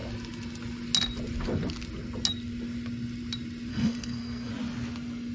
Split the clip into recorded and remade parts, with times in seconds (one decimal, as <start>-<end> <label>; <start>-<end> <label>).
0.0-3.7 recorded; 3.7-4.5 remade; 4.5-5.3 recorded